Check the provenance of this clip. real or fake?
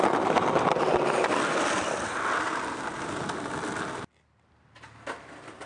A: real